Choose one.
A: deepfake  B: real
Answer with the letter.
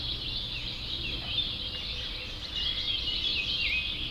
B